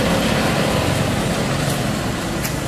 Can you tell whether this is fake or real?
real